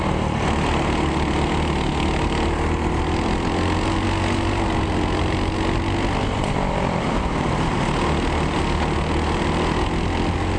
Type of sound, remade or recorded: recorded